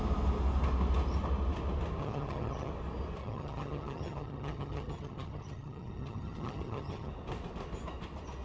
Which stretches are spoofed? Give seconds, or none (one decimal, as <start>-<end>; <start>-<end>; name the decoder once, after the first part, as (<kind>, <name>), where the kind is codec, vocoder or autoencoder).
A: 2.0-2.7 (vocoder, HiFi-GAN); 3.2-7.1